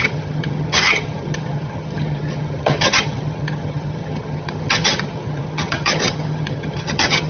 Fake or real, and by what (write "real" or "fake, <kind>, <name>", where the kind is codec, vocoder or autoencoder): fake, vocoder, HiFi-GAN